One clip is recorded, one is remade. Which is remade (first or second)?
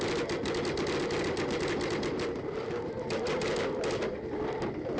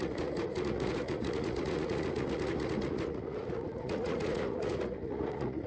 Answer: second